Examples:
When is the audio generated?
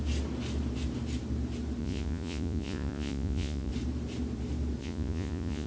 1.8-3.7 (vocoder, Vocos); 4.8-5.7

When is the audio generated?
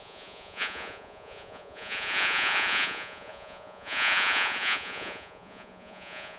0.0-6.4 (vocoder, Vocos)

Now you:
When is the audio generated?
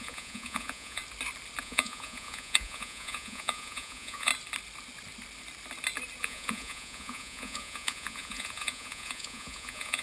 0.0-1.0 (vocoder, Vocos); 1.6-4.3; 6.2-10.0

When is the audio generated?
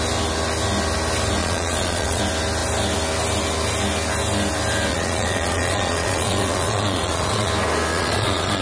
1.4-2.2 (vocoder, Vocos); 4.9-7.5; 7.9-8.6